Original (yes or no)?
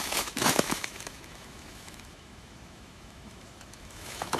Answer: no